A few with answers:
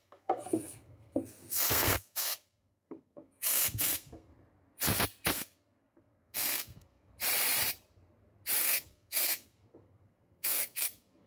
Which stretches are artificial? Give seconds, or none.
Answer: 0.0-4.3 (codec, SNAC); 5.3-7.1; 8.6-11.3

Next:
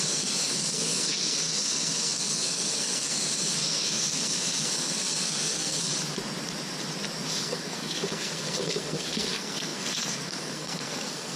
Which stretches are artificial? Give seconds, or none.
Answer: 0.0-5.9 (codec, SNAC); 7.3-11.4

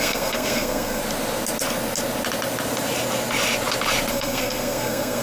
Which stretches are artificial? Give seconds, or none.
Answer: 0.0-1.0 (codec, SNAC); 4.1-5.2

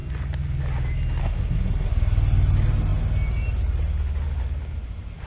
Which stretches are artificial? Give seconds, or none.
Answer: 1.2-1.9 (codec, SNAC)

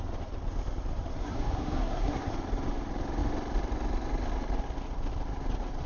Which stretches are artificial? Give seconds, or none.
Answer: 1.2-2.3 (codec, SNAC)

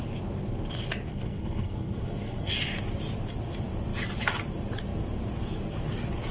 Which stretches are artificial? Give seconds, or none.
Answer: 1.1-2.5 (codec, SNAC)

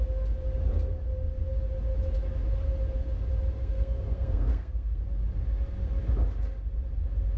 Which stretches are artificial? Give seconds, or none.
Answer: 3.6-5.0 (codec, SNAC)